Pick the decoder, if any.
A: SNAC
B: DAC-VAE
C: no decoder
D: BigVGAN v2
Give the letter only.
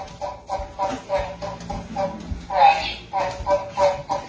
C